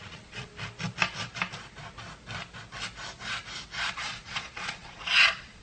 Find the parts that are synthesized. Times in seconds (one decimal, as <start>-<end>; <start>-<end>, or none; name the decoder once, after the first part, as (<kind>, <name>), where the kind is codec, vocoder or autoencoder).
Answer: 0.0-0.5 (vocoder, Vocos); 3.9-5.6